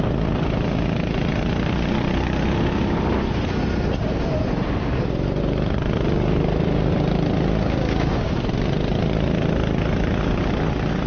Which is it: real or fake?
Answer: real